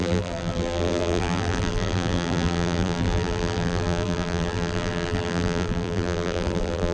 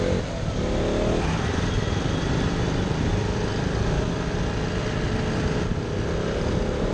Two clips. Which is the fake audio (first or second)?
first